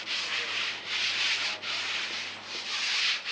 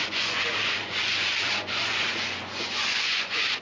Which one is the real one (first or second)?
first